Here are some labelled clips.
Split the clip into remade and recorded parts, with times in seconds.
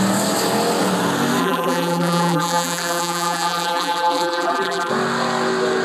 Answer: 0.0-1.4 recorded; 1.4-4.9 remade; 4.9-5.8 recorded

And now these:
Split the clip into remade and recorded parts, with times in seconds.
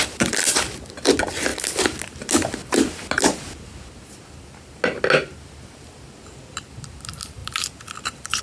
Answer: 0.0-7.4 recorded; 7.4-8.4 remade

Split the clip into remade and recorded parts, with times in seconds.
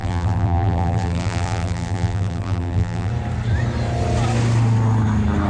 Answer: 0.0-3.1 remade; 3.1-5.5 recorded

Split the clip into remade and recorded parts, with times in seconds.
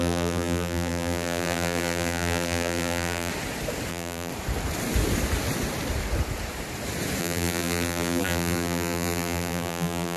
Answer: 0.0-3.3 remade; 3.3-3.9 recorded; 3.9-4.3 remade; 4.3-7.2 recorded; 7.2-10.2 remade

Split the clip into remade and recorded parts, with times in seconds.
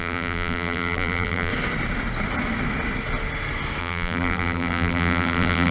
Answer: 0.0-1.5 remade; 1.5-3.8 recorded; 3.8-5.7 remade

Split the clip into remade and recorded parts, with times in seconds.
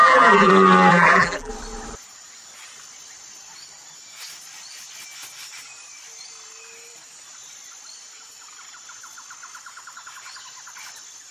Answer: 0.0-0.5 remade; 0.5-0.9 recorded; 0.9-1.5 remade; 1.5-11.3 recorded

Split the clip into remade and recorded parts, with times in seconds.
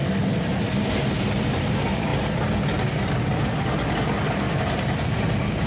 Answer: 0.0-2.1 remade; 2.1-5.7 recorded